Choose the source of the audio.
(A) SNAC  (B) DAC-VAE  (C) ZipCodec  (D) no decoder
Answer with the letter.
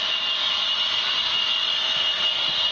D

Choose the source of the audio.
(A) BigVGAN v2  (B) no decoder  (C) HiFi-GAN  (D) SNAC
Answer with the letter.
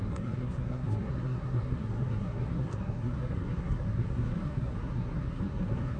D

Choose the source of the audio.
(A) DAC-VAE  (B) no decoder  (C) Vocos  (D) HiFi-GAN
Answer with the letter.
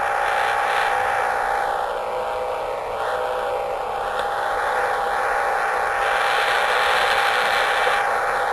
B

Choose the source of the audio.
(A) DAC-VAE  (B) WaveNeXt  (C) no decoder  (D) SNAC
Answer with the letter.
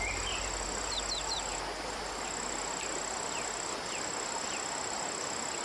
C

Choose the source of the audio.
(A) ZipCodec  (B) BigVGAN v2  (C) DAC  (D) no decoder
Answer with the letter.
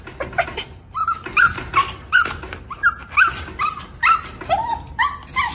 D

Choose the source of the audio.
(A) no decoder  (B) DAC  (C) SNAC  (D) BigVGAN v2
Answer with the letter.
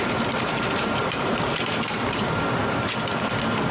D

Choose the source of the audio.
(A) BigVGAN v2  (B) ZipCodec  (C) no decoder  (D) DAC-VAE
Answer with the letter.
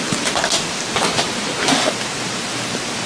C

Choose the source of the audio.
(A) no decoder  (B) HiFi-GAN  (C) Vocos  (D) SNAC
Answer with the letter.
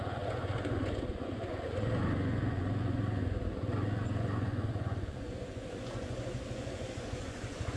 C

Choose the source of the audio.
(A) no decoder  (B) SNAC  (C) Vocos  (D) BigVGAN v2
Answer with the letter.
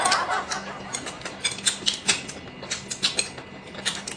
A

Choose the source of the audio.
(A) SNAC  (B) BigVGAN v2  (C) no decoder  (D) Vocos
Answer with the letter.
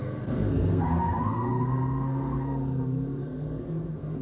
A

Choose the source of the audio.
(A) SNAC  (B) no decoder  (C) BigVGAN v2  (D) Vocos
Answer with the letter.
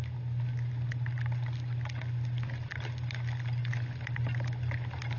B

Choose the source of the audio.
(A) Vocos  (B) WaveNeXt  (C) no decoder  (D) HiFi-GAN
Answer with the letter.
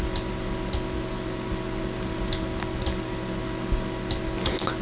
C